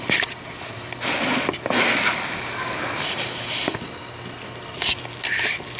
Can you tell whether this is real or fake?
real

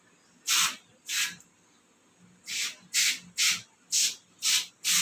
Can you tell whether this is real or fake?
real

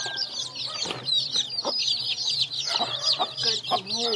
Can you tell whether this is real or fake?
real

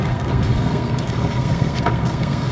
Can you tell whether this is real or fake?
fake